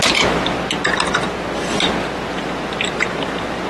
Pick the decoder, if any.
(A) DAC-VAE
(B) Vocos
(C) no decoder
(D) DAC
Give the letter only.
C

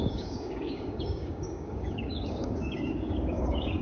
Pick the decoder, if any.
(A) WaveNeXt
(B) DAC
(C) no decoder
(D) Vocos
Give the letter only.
B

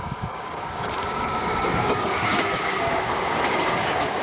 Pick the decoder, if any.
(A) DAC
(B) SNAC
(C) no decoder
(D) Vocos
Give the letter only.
A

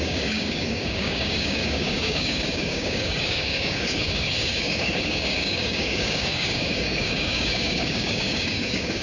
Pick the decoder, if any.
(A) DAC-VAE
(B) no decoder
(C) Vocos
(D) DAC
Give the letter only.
D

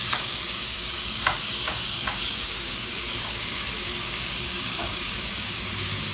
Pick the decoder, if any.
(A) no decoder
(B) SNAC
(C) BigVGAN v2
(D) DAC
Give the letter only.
D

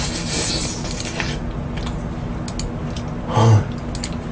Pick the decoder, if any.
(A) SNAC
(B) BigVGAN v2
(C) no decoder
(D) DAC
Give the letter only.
C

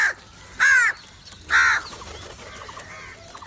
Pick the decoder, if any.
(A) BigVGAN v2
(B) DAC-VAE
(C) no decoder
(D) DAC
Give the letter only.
C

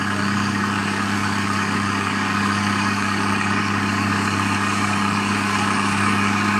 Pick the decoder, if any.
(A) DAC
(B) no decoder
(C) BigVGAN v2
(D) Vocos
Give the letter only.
A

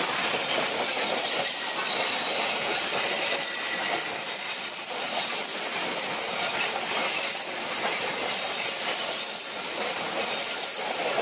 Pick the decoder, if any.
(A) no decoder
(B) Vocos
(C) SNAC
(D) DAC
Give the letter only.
A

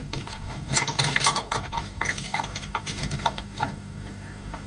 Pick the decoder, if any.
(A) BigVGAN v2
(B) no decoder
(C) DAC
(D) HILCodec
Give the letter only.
C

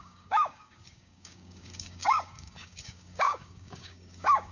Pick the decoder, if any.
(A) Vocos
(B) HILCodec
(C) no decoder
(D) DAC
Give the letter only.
D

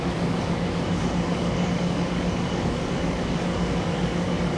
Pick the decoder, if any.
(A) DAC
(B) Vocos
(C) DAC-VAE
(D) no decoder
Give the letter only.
A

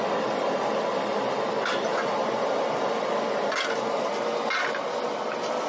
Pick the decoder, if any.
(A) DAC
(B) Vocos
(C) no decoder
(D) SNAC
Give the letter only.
C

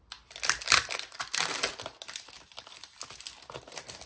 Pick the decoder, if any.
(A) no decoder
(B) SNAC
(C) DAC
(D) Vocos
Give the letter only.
A